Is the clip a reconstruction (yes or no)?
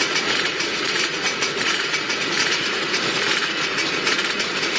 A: yes